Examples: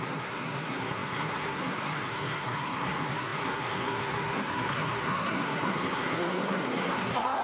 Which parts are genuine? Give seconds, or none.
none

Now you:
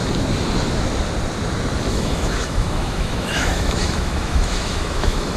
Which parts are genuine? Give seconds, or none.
0.0-1.9

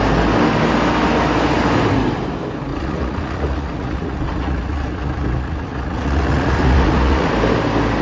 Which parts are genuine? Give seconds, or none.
0.0-2.7; 7.3-8.0

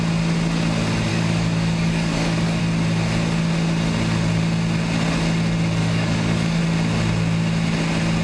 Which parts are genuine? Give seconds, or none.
0.0-1.1; 2.6-5.8; 6.6-8.2